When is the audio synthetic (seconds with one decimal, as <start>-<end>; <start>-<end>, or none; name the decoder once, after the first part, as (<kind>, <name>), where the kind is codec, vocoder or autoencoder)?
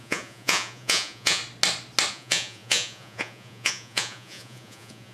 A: 0.0-1.4 (vocoder, Vocos); 2.1-5.1